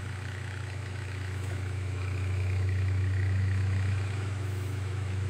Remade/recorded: remade